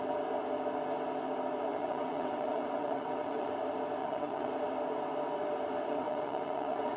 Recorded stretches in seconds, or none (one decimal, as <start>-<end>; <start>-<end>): 0.0-1.7; 3.5-4.0; 4.5-5.9

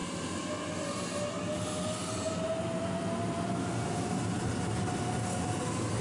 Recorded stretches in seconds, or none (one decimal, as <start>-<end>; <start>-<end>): 0.0-6.0

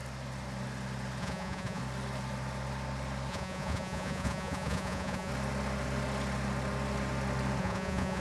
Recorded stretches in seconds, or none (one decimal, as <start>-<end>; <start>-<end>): 0.0-1.2; 1.8-3.3; 5.3-7.6